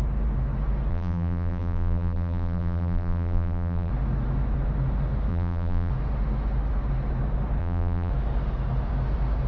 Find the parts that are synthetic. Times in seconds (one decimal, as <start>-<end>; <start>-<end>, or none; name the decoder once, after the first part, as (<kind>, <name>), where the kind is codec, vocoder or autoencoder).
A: 0.9-3.9 (vocoder, BigVGAN v2); 5.3-5.9; 7.6-8.1